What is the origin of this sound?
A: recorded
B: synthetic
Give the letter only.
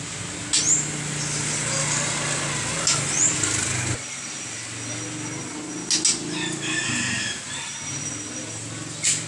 A